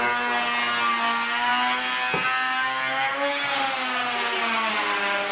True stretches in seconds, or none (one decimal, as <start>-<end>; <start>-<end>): 0.0-5.3